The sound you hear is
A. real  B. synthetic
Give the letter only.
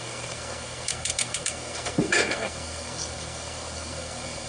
B